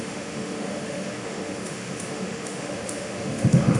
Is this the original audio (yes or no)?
no